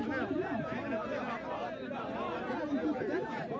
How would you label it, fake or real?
real